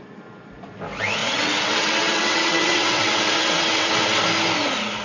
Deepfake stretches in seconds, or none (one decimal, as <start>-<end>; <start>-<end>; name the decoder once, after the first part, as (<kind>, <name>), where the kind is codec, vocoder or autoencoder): 1.2-4.2 (vocoder, WaveNeXt)